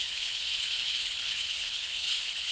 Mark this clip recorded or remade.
remade